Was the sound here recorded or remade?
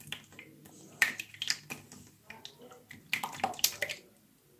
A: recorded